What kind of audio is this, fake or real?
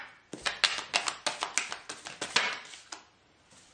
real